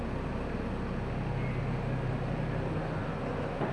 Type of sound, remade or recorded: recorded